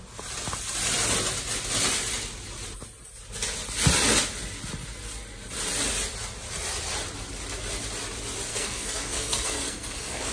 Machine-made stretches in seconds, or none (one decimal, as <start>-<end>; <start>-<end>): 8.5-10.3